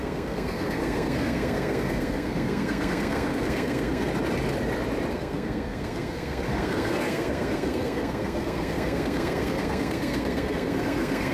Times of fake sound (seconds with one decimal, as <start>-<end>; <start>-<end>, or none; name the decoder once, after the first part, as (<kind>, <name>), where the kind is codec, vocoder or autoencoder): 0.0-4.1 (codec, SNAC); 5.1-11.3